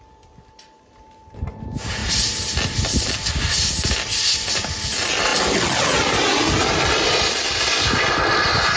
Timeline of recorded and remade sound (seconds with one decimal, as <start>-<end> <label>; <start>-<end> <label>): 0.0-8.8 recorded